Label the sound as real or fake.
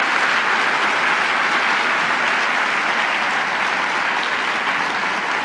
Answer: real